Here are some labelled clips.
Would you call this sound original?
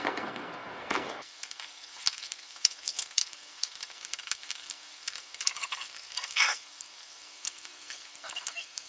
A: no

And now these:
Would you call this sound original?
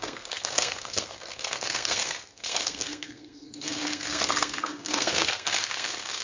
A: no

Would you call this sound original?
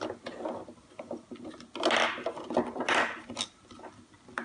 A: yes